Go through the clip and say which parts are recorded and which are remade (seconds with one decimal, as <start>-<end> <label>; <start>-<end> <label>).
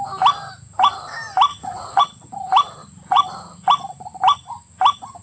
0.0-1.5 recorded; 1.5-2.0 remade; 2.0-2.8 recorded; 2.8-3.7 remade; 3.7-5.2 recorded